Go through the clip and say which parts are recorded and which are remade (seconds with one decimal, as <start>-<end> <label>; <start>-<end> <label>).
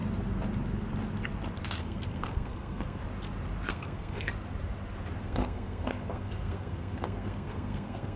0.0-1.8 recorded; 1.8-3.0 remade; 3.0-3.7 recorded; 3.7-4.3 remade; 4.3-5.2 recorded; 5.2-8.2 remade